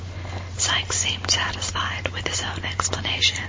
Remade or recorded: recorded